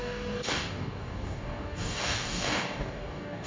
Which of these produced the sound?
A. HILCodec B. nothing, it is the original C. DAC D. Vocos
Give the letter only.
C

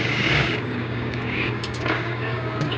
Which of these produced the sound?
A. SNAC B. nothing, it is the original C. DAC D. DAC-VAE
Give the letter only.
C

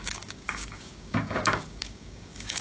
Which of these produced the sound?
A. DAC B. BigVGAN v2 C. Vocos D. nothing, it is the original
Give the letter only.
A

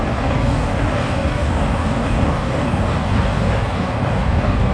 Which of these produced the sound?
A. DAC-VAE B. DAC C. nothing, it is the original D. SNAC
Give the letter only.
B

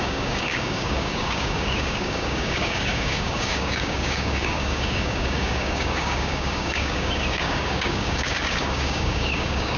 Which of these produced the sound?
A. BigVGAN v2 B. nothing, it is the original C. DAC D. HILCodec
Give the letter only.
C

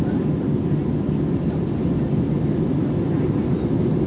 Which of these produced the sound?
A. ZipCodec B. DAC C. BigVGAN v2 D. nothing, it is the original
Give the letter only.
D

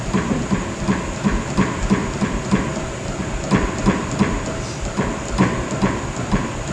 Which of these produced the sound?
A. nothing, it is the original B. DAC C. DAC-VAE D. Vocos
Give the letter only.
A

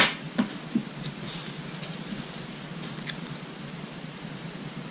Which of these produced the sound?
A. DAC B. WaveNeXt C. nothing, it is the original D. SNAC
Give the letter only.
C